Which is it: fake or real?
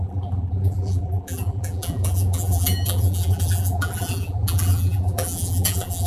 fake